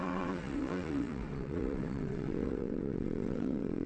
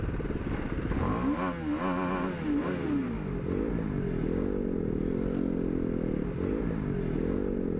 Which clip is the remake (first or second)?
first